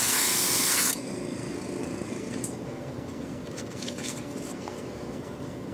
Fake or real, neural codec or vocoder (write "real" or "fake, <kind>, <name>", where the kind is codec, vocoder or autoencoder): fake, codec, SNAC